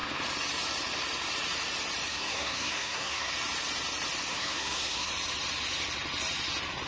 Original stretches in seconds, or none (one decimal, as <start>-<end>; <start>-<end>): 0.0-2.1; 3.3-4.3; 5.1-6.9